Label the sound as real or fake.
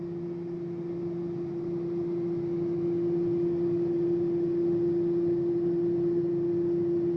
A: real